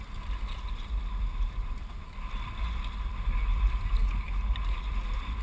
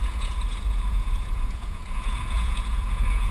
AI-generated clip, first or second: second